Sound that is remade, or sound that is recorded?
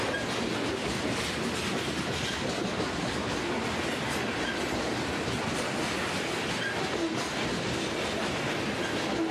recorded